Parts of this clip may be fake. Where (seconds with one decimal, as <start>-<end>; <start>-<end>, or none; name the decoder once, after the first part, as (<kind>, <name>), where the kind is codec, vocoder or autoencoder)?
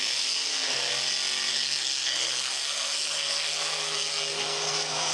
0.0-0.9 (codec, SNAC); 1.5-5.1